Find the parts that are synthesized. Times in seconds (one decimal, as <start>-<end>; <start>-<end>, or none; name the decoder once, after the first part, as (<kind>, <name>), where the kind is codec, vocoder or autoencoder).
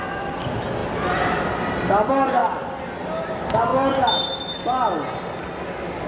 none